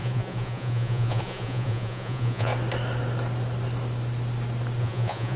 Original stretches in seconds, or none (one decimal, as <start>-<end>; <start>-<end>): 2.5-4.8